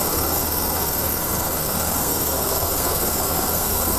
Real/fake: fake